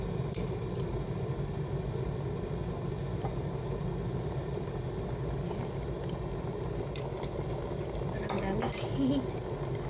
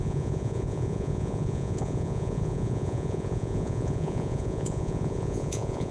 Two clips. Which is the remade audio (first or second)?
second